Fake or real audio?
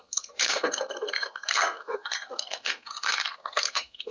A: fake